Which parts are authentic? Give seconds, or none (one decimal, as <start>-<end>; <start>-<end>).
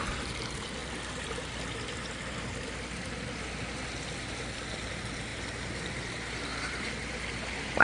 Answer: 0.0-0.8; 2.1-5.3; 6.1-6.5; 7.2-7.8